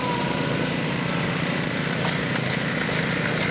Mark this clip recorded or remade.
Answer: recorded